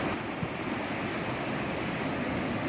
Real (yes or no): yes